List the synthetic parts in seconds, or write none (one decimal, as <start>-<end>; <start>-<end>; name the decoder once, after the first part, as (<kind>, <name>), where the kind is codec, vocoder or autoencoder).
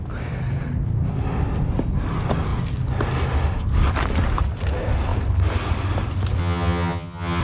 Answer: 6.4-7.4 (vocoder, HiFi-GAN)